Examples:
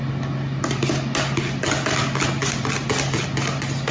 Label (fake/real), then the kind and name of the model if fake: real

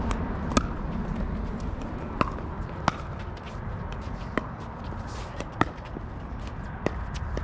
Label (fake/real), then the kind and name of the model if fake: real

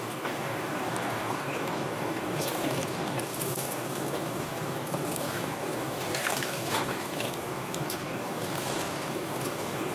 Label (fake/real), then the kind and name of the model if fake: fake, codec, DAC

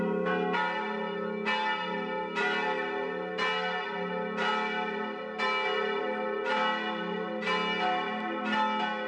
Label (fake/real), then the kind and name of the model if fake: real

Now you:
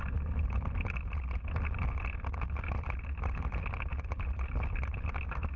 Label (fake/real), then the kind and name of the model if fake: real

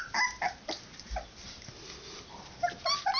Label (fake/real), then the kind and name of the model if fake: real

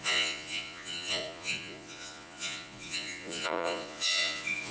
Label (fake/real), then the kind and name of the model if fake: fake, vocoder, Vocos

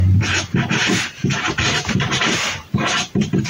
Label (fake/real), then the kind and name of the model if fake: fake, vocoder, BigVGAN v2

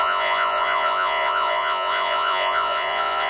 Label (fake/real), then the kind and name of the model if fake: fake, vocoder, Vocos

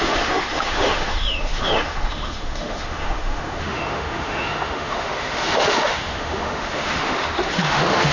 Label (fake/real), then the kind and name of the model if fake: fake, autoencoder, DAC-VAE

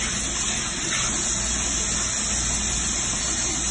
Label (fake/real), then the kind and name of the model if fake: real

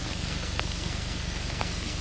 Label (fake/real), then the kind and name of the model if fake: fake, codec, SNAC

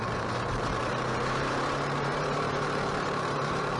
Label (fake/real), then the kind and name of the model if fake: fake, vocoder, BigVGAN v2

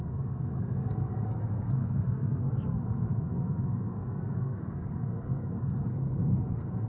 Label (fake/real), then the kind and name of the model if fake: fake, codec, SNAC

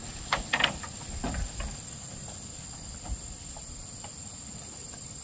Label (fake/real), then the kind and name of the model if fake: real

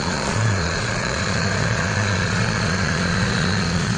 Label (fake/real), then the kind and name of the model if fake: fake, vocoder, Vocos